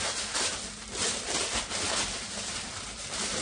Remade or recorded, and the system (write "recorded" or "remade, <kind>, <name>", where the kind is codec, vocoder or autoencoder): recorded